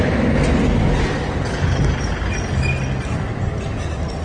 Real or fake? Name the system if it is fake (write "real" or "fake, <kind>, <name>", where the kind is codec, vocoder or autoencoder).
real